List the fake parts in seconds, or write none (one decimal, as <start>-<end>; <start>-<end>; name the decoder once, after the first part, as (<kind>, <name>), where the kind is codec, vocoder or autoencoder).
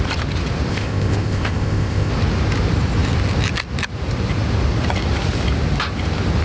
0.7-2.1 (codec, ZipCodec)